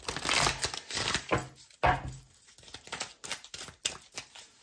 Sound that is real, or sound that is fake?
real